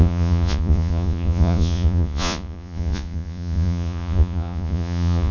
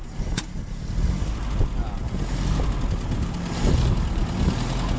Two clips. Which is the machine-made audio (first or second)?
first